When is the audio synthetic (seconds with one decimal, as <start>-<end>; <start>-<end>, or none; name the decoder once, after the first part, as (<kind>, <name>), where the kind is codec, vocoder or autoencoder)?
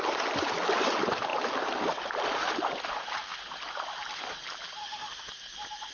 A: 4.8-5.3 (autoencoder, DAC-VAE)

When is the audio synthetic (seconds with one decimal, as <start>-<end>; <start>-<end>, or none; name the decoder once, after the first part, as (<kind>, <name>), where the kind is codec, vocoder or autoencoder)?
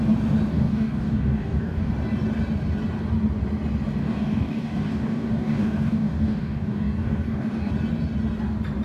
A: 0.5-1.9 (codec, DAC); 4.0-7.7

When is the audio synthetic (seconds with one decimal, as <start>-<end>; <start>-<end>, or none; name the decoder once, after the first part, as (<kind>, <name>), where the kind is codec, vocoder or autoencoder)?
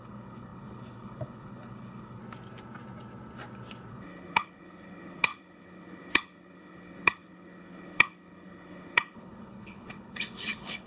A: 0.0-2.2 (codec, HILCodec); 3.9-10.9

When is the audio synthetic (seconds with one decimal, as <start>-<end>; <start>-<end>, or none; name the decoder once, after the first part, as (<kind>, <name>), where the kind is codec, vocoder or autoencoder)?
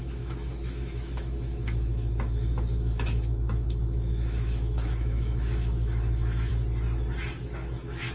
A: 0.0-6.5 (autoencoder, DAC-VAE); 7.4-8.1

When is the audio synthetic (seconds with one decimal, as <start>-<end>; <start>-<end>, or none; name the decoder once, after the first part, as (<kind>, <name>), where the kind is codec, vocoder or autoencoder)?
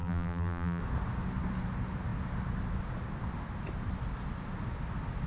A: 0.0-0.8 (vocoder, BigVGAN v2)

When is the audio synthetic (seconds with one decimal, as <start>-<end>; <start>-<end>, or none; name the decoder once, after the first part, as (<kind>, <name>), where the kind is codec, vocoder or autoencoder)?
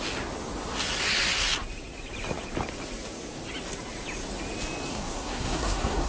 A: 4.9-6.1 (codec, SNAC)